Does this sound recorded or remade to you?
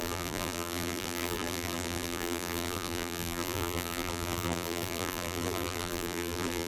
remade